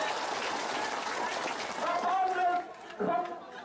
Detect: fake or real real